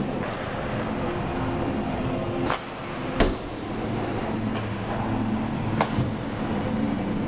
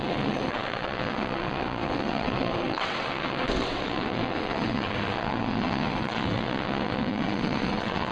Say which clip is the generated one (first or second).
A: second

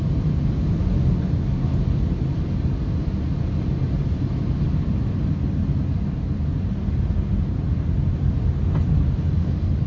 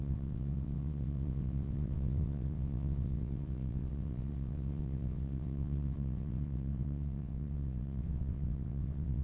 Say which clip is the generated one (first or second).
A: second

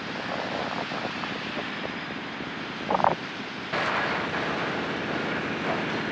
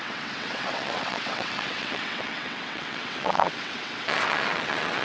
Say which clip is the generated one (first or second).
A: second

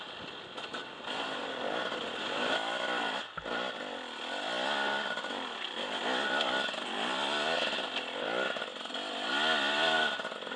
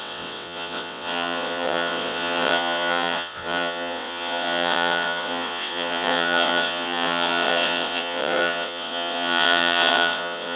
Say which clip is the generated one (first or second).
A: second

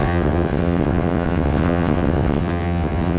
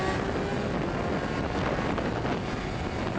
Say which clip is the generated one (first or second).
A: first